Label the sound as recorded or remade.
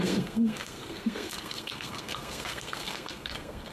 remade